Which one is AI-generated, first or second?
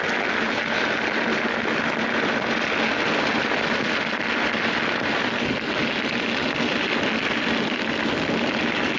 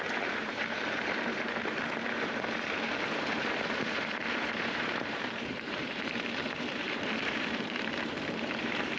second